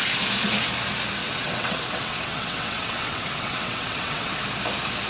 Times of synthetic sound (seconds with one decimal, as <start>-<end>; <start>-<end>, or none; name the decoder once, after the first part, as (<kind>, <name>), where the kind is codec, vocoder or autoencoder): 1.2-4.3 (vocoder, WaveNeXt)